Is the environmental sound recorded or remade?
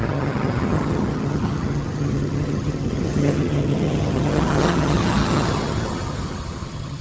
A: remade